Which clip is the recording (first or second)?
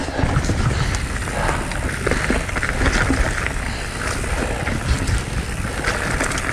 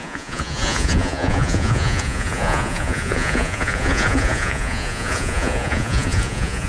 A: first